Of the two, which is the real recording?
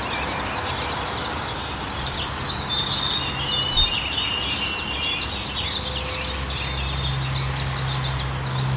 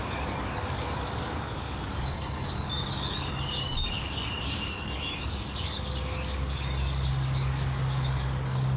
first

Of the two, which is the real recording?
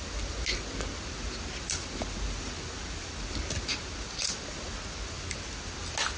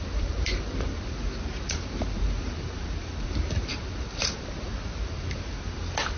first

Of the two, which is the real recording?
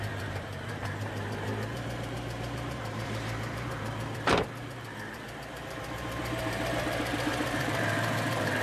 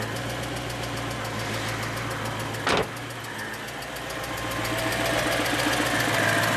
second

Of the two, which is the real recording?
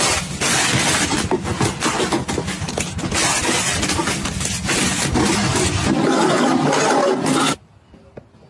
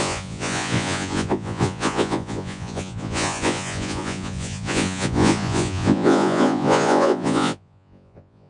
first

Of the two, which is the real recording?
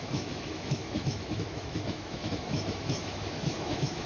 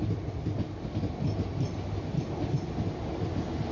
second